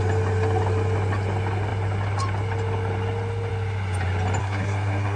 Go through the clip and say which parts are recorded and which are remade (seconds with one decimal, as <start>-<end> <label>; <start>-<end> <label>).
0.0-4.4 recorded; 4.4-5.2 remade